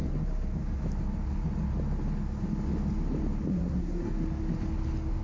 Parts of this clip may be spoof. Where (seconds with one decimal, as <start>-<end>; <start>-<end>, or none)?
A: 3.5-4.1